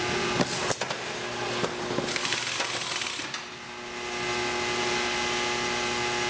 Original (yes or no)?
yes